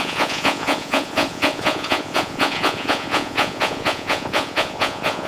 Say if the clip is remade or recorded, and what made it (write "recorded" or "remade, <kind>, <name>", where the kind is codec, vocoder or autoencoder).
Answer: remade, vocoder, Vocos